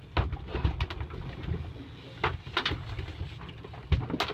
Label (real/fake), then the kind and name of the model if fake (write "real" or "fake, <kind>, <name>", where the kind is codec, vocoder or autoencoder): real